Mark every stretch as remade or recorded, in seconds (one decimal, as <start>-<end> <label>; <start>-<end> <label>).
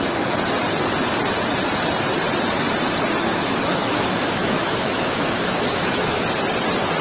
0.0-3.3 recorded; 3.3-6.2 remade; 6.2-7.0 recorded